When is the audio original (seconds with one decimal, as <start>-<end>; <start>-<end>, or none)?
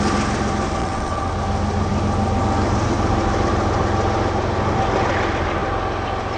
0.0-0.8; 1.3-6.4